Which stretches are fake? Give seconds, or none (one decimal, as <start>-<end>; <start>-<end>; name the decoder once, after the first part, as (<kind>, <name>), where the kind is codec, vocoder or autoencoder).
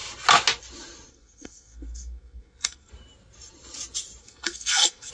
1.1-2.9 (codec, SNAC); 4.2-5.1